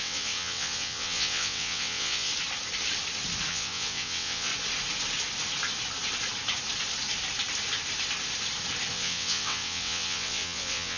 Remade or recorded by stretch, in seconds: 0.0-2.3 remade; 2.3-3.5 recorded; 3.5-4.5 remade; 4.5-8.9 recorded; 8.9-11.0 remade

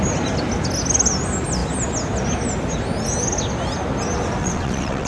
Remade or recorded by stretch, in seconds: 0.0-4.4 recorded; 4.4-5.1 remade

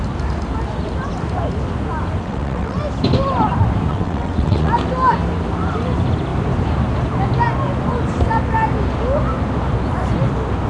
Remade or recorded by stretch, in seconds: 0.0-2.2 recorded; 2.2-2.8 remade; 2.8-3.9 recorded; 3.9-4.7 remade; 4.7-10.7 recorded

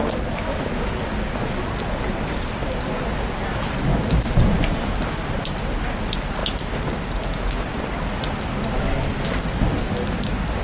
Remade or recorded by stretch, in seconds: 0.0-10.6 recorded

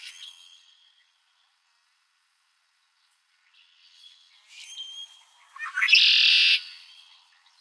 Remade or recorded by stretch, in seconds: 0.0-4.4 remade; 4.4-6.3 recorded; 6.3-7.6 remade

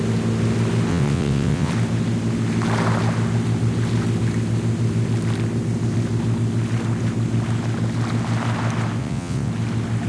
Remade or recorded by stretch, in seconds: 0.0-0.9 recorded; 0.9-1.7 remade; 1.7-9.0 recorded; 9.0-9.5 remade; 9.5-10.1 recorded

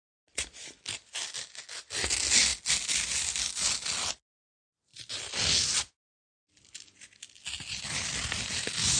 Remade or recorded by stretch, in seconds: 0.0-9.0 recorded